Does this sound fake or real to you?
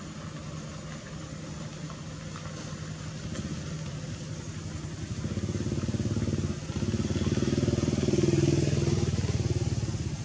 real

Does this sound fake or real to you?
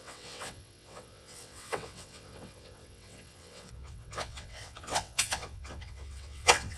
fake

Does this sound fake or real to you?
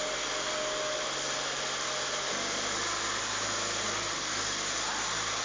real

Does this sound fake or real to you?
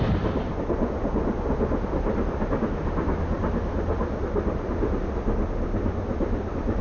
real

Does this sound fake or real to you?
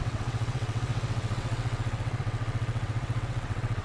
fake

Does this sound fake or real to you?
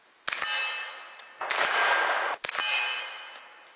real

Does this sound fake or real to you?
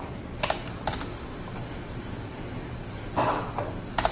real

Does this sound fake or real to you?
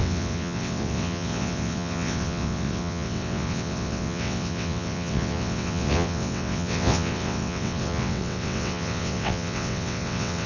fake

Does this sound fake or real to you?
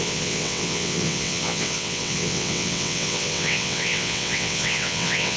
fake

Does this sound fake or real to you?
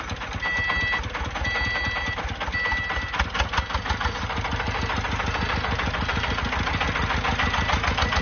real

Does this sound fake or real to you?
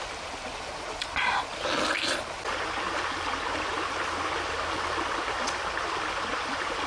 real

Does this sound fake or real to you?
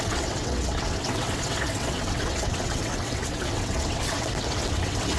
fake